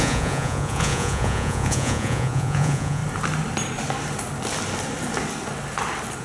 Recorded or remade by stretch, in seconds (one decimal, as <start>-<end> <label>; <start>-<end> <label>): 0.0-3.0 remade; 3.0-6.2 recorded